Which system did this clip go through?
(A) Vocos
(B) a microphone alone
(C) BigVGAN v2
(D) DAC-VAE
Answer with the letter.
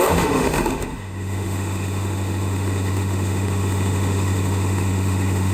D